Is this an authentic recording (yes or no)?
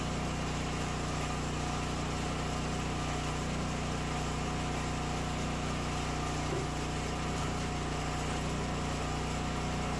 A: yes